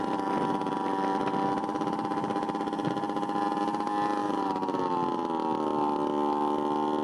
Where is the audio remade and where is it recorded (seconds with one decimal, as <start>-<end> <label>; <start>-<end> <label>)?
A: 0.0-4.2 recorded; 4.2-4.8 remade; 4.8-7.0 recorded